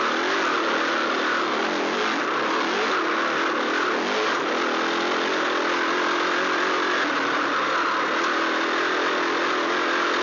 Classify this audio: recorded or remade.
recorded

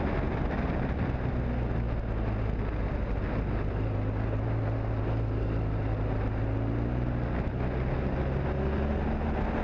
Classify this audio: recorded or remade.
recorded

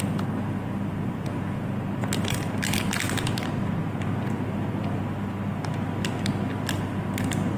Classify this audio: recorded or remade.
recorded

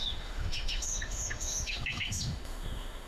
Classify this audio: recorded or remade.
remade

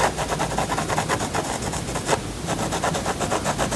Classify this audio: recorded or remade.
recorded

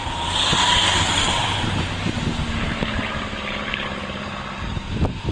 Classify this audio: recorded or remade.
remade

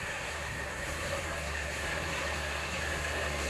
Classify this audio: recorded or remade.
remade